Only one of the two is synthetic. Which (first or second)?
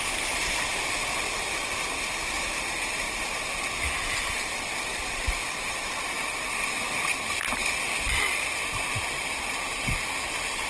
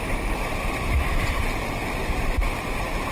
second